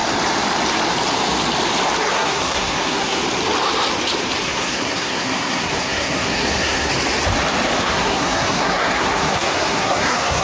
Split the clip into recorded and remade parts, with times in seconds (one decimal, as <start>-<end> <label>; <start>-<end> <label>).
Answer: 0.0-2.1 recorded; 2.1-3.2 remade; 3.2-4.4 recorded; 4.4-6.9 remade; 6.9-7.8 recorded; 7.8-10.4 remade